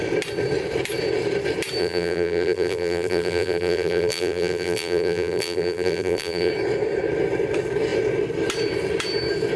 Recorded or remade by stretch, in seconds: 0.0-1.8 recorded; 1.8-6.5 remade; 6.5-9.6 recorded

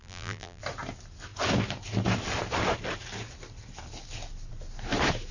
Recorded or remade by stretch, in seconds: 0.0-0.6 remade; 0.6-5.3 recorded

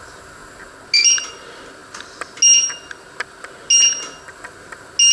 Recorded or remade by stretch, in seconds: 0.0-5.1 recorded

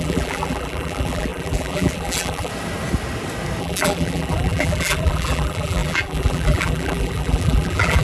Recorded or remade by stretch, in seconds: 0.0-2.5 remade; 2.5-3.6 recorded; 3.6-8.0 remade